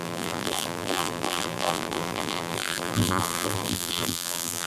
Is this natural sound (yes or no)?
no